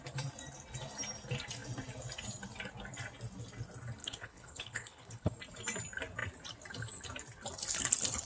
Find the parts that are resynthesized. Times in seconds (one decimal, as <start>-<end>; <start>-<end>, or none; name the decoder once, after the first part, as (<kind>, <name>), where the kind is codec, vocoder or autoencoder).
4.0-5.3 (codec, HILCodec)